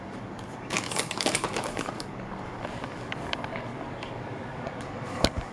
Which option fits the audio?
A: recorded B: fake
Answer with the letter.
B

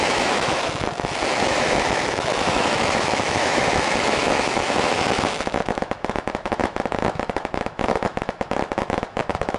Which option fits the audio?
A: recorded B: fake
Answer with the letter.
B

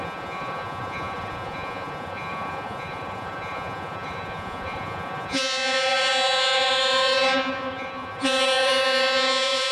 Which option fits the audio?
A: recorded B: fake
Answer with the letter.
B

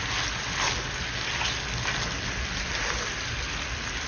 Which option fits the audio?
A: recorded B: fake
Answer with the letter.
A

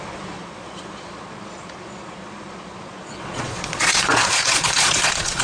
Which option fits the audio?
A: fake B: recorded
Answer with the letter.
A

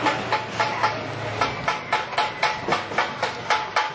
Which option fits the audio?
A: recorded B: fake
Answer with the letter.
A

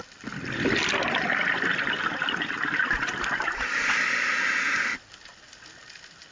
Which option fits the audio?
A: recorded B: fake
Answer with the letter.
A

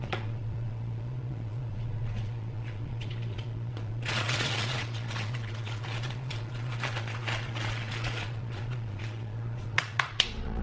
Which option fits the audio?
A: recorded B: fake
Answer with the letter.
B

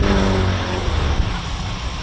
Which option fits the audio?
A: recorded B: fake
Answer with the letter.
A